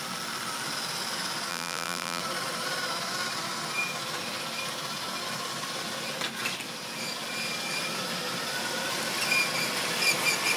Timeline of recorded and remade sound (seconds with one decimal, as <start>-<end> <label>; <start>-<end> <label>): 0.0-1.5 recorded; 1.5-2.2 remade; 2.2-10.6 recorded